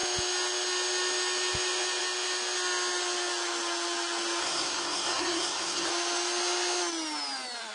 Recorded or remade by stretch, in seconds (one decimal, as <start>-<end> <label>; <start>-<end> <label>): 0.0-4.4 recorded; 4.4-5.9 remade; 5.9-7.7 recorded